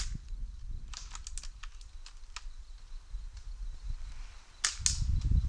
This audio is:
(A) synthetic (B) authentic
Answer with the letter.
B